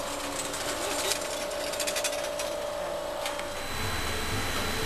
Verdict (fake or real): real